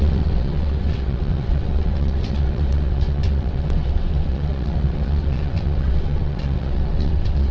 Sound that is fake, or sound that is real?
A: fake